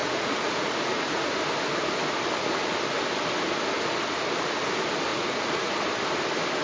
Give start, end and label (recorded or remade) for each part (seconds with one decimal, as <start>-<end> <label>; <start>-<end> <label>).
0.0-1.3 remade; 1.3-5.1 recorded; 5.1-5.7 remade; 5.7-6.6 recorded